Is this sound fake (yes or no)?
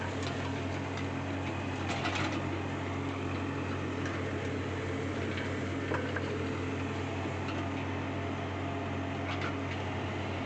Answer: no